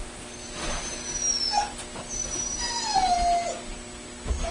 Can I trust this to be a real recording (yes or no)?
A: yes